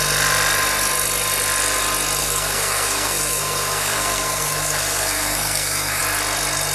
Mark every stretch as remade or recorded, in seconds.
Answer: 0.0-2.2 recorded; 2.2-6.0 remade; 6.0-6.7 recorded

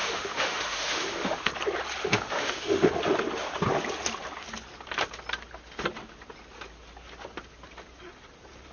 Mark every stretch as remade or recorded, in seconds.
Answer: 0.0-1.5 remade; 1.5-2.0 recorded; 2.0-2.9 remade; 2.9-8.7 recorded